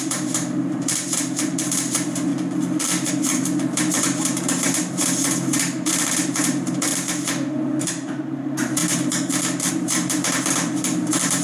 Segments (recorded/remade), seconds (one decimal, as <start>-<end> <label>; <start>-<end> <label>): 0.0-2.3 remade; 2.3-3.1 recorded; 3.1-6.9 remade; 6.9-7.9 recorded; 7.9-8.8 remade; 8.8-9.7 recorded; 9.7-11.4 remade